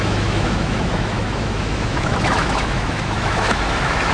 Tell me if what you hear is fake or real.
fake